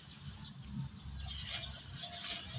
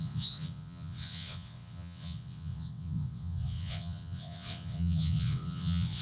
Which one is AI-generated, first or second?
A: second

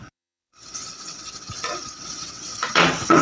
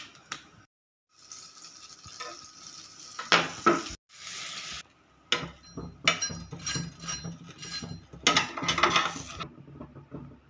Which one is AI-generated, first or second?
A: first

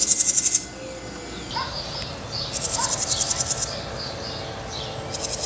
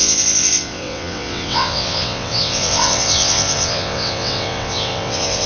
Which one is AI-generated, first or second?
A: second